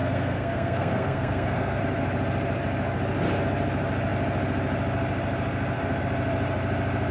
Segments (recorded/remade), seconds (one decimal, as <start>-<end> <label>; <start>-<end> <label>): 0.0-1.8 remade; 1.8-7.1 recorded